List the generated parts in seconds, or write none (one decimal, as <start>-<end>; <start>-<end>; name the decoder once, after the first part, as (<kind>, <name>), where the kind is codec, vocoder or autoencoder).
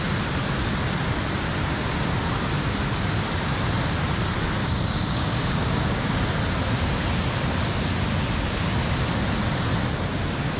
4.6-6.2 (codec, DAC)